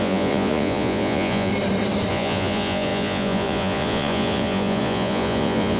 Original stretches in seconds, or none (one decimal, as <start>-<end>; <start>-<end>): 1.5-2.1